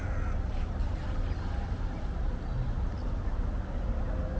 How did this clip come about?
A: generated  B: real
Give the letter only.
B